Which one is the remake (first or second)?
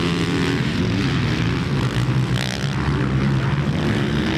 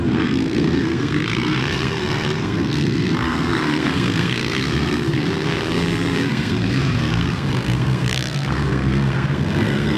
second